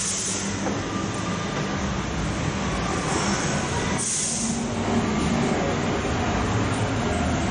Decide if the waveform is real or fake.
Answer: real